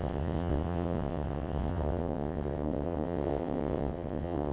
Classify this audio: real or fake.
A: fake